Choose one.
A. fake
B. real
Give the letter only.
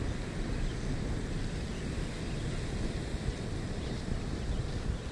B